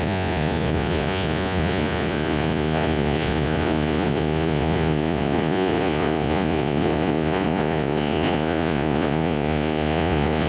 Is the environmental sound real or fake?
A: fake